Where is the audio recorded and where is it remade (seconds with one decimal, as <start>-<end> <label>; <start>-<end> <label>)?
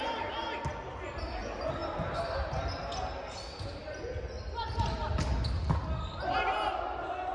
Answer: 0.0-7.3 recorded